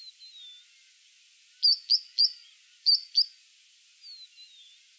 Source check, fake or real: real